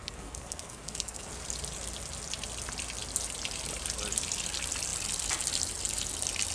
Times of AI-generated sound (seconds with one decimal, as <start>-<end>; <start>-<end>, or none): 0.0-1.3